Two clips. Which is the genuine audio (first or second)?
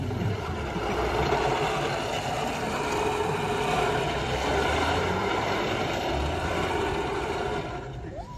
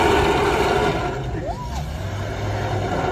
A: second